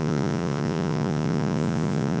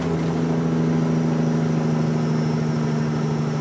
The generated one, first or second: first